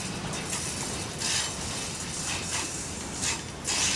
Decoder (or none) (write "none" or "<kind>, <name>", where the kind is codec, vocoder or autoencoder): none